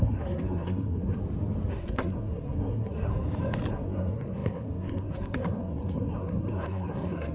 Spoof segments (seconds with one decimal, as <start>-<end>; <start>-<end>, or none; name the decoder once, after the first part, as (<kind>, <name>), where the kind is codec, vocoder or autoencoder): 0.0-1.2 (codec, SNAC); 1.7-3.1; 3.7-7.3